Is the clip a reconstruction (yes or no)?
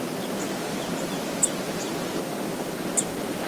no